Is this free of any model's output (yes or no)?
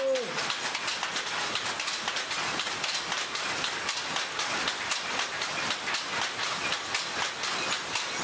yes